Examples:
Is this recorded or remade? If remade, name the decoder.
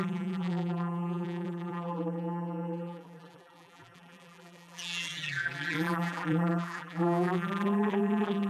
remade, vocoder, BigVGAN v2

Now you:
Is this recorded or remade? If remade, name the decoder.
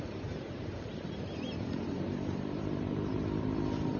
remade, vocoder, BigVGAN v2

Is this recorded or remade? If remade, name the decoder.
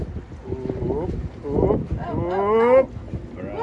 recorded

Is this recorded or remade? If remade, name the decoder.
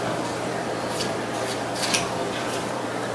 remade, vocoder, BigVGAN v2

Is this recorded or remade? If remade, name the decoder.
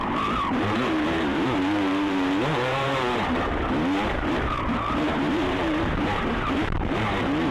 remade, vocoder, BigVGAN v2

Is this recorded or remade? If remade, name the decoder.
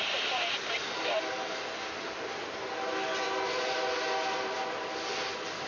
recorded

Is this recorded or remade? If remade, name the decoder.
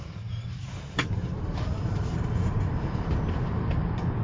remade, vocoder, BigVGAN v2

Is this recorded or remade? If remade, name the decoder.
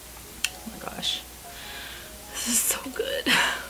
remade, vocoder, BigVGAN v2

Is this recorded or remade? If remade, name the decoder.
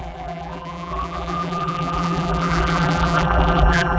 remade, vocoder, BigVGAN v2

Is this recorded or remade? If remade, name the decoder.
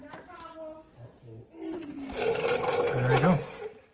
recorded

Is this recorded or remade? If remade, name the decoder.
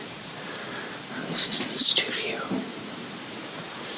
remade, vocoder, BigVGAN v2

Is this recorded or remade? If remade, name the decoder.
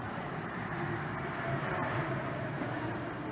remade, vocoder, BigVGAN v2